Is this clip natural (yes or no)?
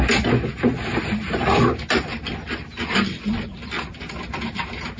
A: yes